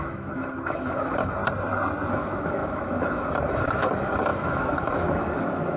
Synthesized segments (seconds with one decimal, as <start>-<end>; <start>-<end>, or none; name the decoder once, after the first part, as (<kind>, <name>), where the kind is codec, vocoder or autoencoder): 0.0-1.4 (autoencoder, DAC-VAE); 2.1-5.8